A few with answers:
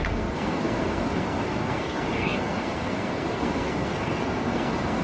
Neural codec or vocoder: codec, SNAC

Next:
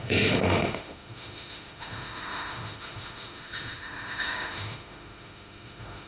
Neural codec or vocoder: autoencoder, DAC-VAE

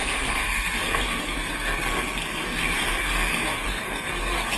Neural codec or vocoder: codec, SNAC